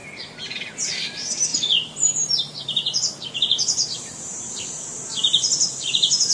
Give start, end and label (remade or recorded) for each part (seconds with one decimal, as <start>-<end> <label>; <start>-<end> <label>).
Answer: 0.0-4.9 remade; 4.9-5.7 recorded; 5.7-6.3 remade